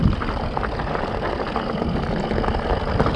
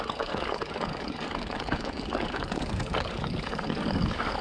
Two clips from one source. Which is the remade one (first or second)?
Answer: second